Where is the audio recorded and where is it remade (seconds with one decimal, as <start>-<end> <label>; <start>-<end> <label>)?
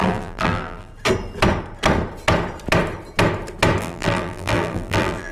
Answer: 0.0-0.9 remade; 0.9-3.8 recorded; 3.8-5.3 remade